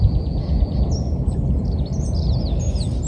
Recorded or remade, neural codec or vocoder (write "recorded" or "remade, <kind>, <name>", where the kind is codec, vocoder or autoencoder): recorded